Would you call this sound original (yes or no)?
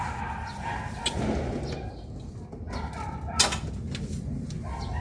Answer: yes